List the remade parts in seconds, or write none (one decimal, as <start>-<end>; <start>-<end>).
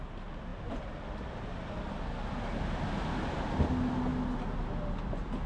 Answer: none